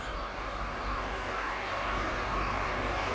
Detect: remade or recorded remade